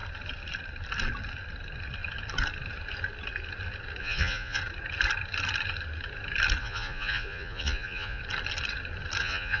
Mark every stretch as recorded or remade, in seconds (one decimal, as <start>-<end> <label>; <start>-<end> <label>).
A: 0.0-4.0 recorded; 4.0-4.6 remade; 4.6-6.6 recorded; 6.6-8.2 remade; 8.2-9.2 recorded; 9.2-9.6 remade